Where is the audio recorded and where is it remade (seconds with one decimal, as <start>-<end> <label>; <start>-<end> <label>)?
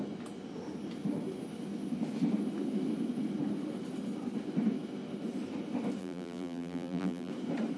0.0-6.0 recorded; 6.0-7.3 remade; 7.3-7.8 recorded